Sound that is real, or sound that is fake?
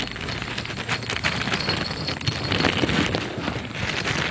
real